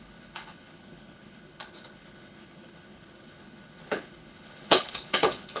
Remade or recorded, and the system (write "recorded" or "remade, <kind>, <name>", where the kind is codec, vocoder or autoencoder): remade, codec, HILCodec